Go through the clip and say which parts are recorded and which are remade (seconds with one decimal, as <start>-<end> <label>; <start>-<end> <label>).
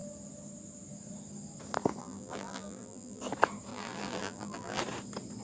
0.0-2.0 recorded; 2.0-3.2 remade; 3.2-3.7 recorded; 3.7-4.8 remade; 4.8-5.4 recorded